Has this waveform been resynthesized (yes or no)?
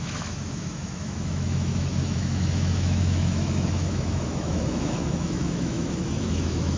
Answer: yes